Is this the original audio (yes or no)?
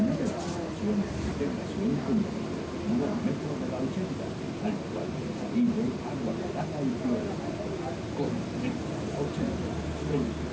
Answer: yes